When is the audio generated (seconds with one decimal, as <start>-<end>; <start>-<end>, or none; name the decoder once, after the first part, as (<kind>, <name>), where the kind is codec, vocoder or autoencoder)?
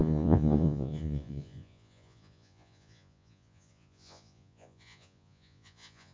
0.0-6.1 (vocoder, Vocos)